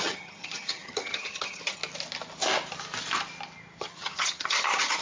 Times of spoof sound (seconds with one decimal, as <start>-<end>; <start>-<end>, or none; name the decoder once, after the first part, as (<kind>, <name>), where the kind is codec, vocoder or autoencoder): 0.0-1.8 (vocoder, HiFi-GAN); 3.8-5.0